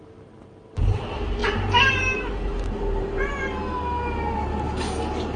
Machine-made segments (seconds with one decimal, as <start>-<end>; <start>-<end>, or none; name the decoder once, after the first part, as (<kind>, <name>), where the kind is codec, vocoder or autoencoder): 1.4-3.8 (vocoder, BigVGAN v2)